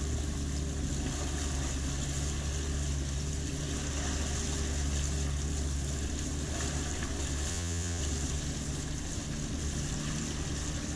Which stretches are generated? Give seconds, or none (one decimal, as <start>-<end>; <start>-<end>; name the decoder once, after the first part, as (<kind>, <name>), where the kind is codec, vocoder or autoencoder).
7.5-8.0 (vocoder, Vocos)